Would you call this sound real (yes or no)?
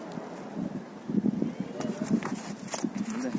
yes